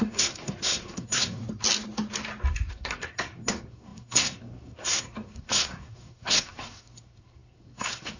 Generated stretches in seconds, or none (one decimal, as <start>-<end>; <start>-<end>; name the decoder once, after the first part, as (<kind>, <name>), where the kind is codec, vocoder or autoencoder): 0.0-1.4 (codec, SNAC); 2.7-8.2